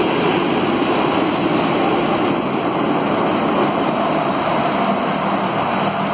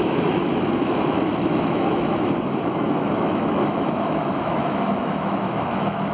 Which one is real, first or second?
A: first